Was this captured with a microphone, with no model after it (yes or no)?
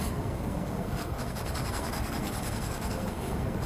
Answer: no